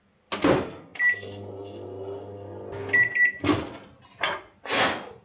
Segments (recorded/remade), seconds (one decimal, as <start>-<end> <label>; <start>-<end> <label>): 0.0-5.2 recorded